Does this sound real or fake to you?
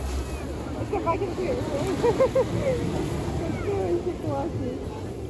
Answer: real